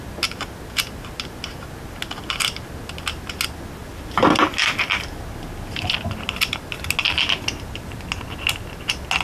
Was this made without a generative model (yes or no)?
yes